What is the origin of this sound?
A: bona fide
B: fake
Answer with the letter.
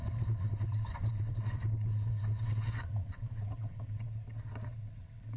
B